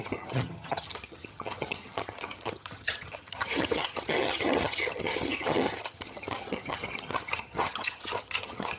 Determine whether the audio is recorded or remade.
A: remade